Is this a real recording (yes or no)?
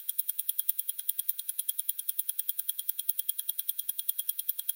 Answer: no